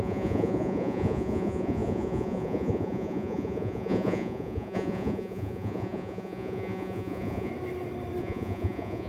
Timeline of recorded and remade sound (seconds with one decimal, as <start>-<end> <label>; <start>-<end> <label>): 0.0-7.5 remade; 7.5-8.2 recorded; 8.2-9.1 remade